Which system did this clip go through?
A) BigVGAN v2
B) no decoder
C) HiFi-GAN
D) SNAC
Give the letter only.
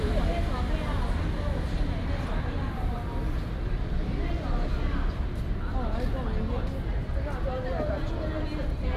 B